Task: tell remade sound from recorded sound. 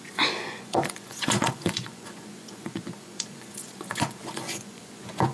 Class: remade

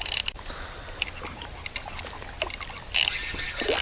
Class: recorded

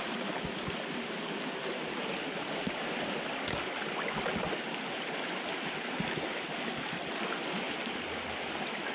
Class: recorded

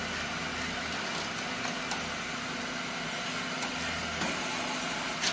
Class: recorded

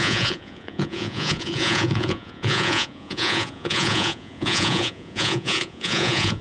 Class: remade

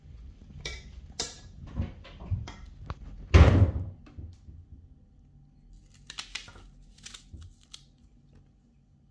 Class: recorded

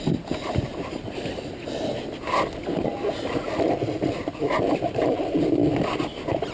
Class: recorded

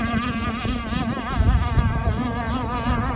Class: recorded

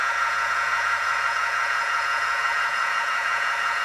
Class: remade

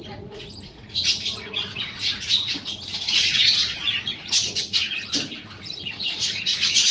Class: remade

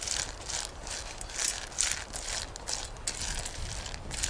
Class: recorded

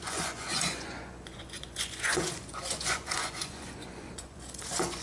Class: remade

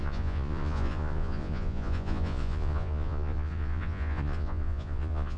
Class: remade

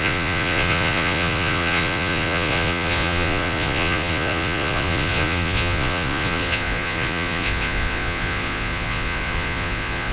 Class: remade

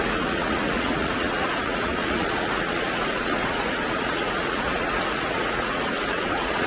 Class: remade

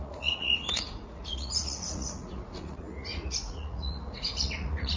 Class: remade